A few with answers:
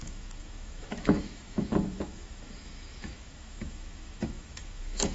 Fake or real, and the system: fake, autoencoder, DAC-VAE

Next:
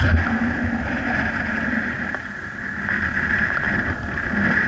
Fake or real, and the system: real